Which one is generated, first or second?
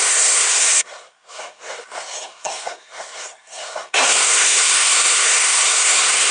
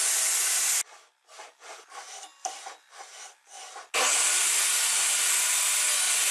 first